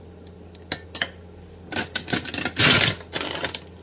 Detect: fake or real real